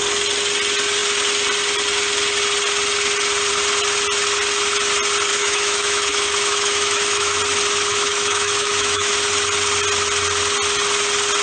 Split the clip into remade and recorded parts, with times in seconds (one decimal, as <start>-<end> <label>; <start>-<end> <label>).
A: 0.0-5.3 recorded; 5.3-7.4 remade; 7.4-7.9 recorded; 7.9-9.1 remade; 9.1-11.4 recorded